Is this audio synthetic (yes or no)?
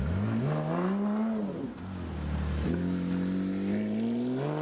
no